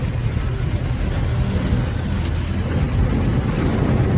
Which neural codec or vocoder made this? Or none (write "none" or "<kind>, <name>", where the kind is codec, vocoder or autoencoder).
none